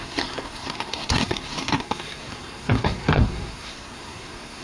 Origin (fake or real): fake